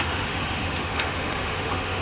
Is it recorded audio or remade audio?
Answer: remade